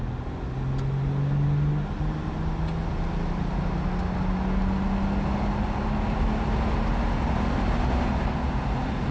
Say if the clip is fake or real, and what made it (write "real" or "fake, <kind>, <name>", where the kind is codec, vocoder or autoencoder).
real